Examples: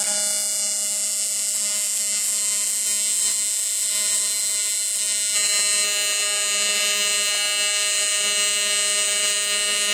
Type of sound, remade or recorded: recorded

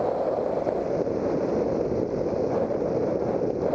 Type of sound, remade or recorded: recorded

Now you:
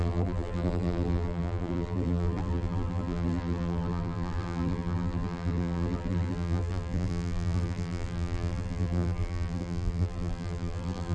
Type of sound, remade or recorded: remade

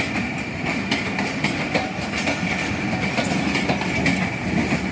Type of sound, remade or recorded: recorded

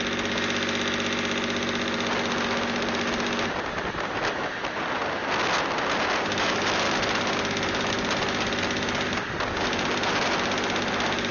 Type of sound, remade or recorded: recorded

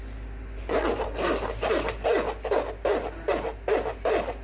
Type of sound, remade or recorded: recorded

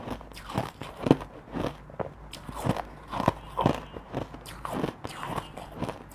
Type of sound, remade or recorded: recorded